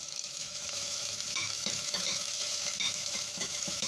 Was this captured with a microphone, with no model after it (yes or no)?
no